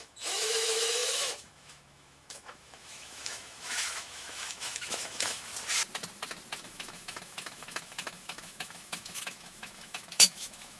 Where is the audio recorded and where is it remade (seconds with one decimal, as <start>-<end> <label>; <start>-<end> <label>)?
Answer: 0.0-5.5 remade; 5.5-6.6 recorded; 6.6-10.8 remade